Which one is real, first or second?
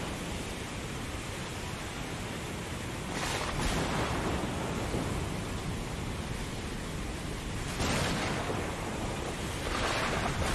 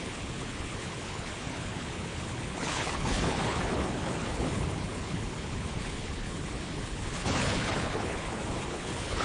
first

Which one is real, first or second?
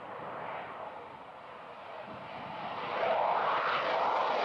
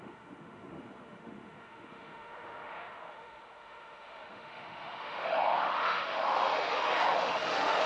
first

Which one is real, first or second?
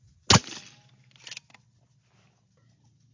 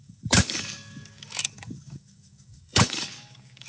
first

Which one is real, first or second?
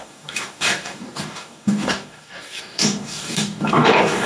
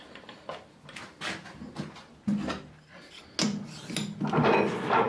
second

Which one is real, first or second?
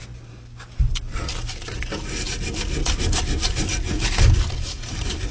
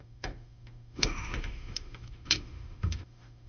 first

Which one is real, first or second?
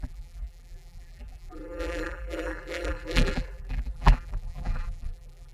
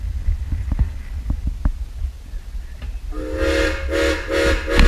second